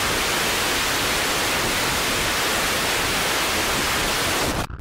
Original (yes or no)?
yes